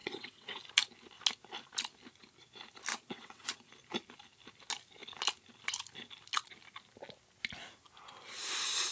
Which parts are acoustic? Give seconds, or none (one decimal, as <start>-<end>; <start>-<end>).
0.6-2.9; 3.7-8.9